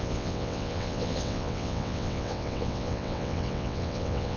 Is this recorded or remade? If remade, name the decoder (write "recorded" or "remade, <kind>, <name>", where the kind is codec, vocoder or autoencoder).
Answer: remade, vocoder, WaveNeXt